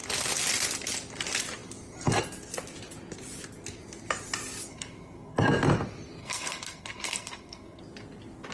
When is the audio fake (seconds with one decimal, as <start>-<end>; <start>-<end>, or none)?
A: 4.7-5.5; 6.2-7.8